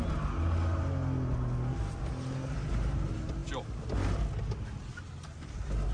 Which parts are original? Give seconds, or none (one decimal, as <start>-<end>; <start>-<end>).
0.0-5.9